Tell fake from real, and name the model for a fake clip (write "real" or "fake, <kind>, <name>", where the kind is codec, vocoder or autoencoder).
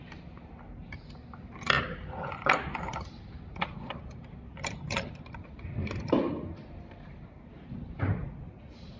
real